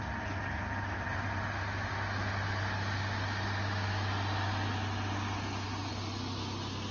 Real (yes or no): yes